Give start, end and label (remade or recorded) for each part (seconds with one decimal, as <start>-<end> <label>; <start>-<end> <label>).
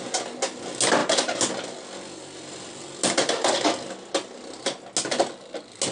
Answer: 0.0-1.0 recorded; 1.0-1.5 remade; 1.5-5.9 recorded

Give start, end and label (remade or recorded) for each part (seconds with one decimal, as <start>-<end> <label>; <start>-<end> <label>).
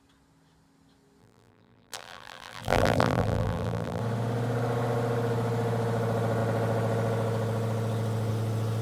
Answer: 0.0-1.2 recorded; 1.2-4.0 remade; 4.0-8.8 recorded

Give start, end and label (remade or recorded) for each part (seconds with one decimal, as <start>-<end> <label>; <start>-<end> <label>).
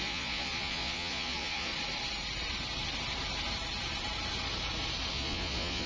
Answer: 0.0-1.7 remade; 1.7-5.1 recorded; 5.1-5.9 remade